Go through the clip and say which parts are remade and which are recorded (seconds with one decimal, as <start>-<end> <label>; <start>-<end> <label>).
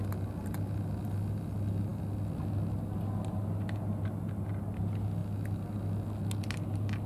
0.0-7.1 recorded